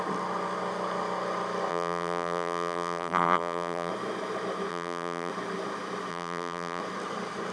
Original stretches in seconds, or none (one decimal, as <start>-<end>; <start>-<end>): 0.0-1.7; 3.9-4.7; 5.3-6.1; 6.8-7.5